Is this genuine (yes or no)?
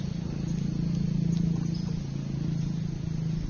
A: yes